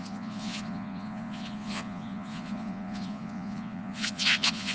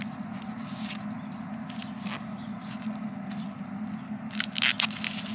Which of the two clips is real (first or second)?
second